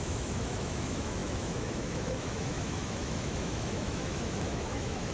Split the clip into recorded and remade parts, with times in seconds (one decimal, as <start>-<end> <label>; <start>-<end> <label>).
0.0-5.1 remade